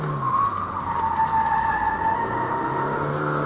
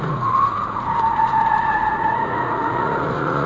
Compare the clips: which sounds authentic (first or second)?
first